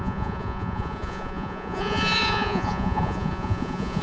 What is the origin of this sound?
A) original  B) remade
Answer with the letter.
B